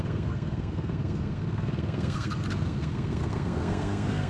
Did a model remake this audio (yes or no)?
yes